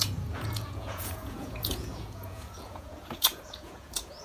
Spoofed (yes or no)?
yes